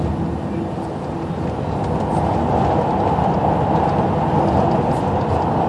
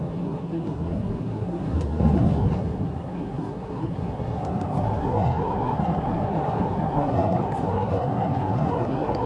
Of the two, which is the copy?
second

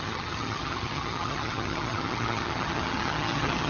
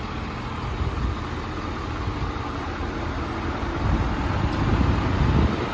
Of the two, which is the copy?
first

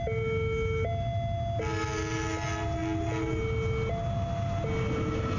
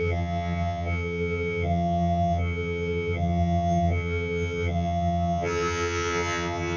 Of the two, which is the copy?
second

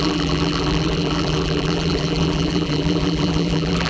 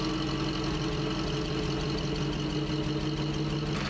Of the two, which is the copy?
first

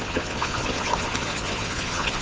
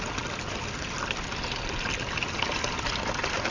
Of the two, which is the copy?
first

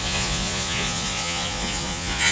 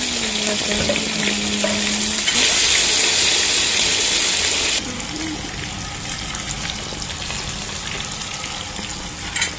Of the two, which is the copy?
first